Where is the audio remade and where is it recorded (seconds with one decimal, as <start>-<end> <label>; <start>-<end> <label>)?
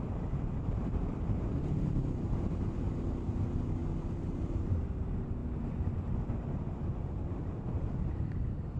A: 0.0-3.8 remade; 3.8-4.5 recorded; 4.5-5.4 remade; 5.4-7.0 recorded; 7.0-8.8 remade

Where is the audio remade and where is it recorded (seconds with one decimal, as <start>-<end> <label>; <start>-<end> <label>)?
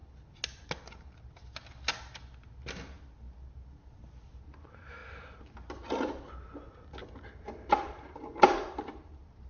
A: 0.0-4.4 recorded; 4.4-5.0 remade; 5.0-7.5 recorded; 7.5-9.5 remade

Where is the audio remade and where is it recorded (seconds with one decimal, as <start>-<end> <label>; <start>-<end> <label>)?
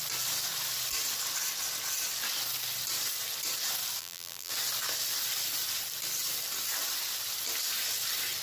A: 0.0-4.0 recorded; 4.0-4.5 remade; 4.5-8.4 recorded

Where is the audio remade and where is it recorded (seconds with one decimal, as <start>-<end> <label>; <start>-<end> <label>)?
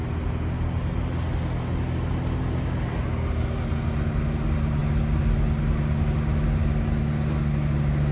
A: 0.0-8.1 recorded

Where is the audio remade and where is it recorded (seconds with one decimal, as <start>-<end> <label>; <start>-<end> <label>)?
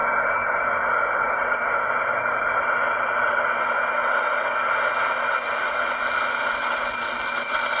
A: 0.0-7.8 recorded